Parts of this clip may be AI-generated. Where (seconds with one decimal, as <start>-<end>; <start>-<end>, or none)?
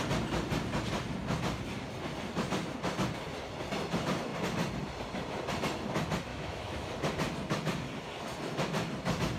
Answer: 6.3-6.9